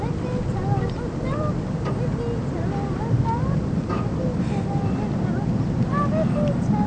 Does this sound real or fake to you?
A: real